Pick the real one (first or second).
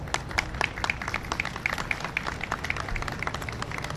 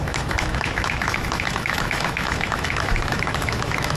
first